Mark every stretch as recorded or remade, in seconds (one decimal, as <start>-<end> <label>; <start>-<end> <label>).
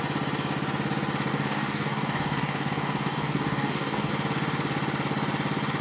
0.0-1.3 recorded; 1.3-4.1 remade; 4.1-5.8 recorded